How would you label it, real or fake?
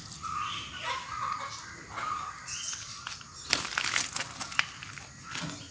real